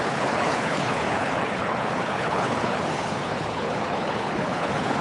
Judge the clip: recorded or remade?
remade